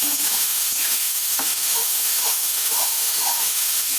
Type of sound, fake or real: fake